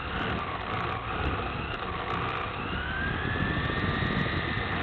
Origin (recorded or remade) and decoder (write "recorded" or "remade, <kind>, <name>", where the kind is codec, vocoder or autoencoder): recorded